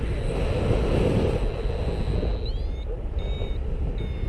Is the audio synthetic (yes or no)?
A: no